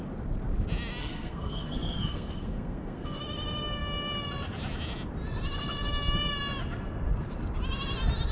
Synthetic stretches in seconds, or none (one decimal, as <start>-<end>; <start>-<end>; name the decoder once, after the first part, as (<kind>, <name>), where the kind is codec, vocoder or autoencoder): 1.0-3.2 (codec, SNAC)